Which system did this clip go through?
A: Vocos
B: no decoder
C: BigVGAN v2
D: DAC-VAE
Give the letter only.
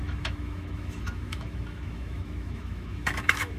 D